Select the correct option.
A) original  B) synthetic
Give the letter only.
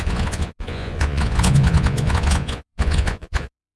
B